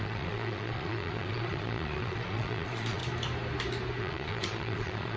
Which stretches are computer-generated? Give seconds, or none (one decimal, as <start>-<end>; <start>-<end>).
0.0-3.0; 4.0-5.2